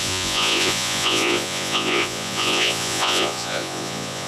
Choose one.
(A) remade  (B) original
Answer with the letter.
A